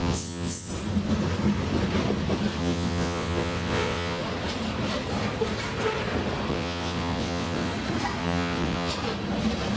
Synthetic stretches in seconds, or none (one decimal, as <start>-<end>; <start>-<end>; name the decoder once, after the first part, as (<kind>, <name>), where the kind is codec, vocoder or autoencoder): 0.0-0.7 (vocoder, WaveNeXt); 2.6-4.2; 6.5-7.7; 8.2-8.9